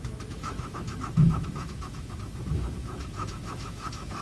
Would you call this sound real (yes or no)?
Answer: no